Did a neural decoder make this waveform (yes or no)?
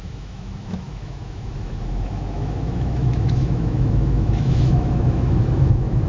yes